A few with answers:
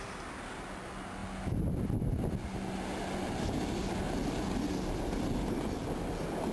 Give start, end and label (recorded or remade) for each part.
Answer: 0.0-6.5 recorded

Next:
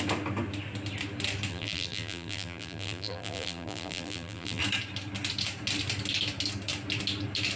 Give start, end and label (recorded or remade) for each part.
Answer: 0.0-1.5 recorded; 1.5-4.6 remade; 4.6-7.6 recorded

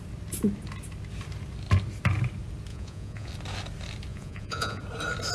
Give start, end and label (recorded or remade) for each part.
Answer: 0.0-2.7 recorded; 2.7-3.3 remade; 3.3-4.1 recorded; 4.1-4.8 remade; 4.8-5.3 recorded

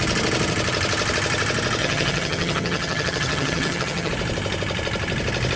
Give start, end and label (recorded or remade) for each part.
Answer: 0.0-1.8 recorded; 1.8-4.1 remade; 4.1-5.6 recorded

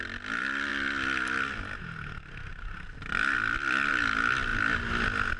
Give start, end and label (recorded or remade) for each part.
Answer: 0.0-5.4 recorded